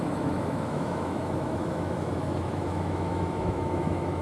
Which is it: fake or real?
fake